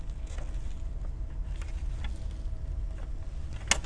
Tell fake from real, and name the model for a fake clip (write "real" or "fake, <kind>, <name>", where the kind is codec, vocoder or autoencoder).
real